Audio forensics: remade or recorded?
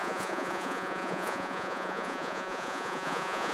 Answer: remade